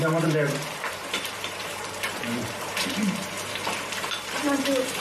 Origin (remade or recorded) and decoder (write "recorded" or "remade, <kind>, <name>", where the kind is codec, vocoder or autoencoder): remade, vocoder, BigVGAN v2